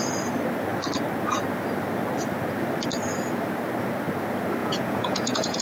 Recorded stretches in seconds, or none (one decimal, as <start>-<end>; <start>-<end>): 0.0-4.6